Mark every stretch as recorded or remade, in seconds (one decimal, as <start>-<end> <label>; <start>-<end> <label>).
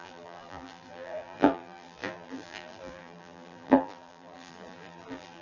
0.0-5.4 remade